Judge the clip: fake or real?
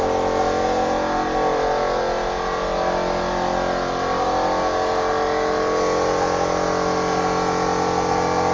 real